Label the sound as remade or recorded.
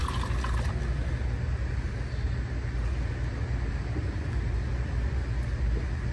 recorded